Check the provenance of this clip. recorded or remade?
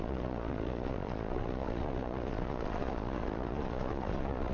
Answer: remade